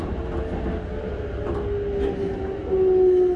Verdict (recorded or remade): recorded